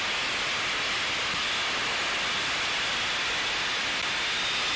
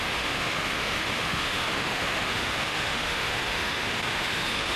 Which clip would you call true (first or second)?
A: first